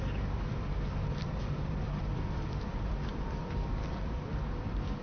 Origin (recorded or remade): remade